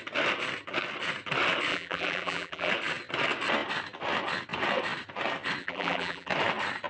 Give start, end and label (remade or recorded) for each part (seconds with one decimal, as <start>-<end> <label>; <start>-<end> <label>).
0.0-1.7 recorded; 1.7-2.7 remade; 2.7-5.6 recorded; 5.6-6.3 remade; 6.3-6.9 recorded